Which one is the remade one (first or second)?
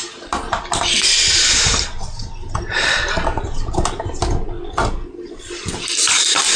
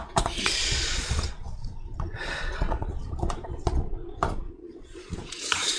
second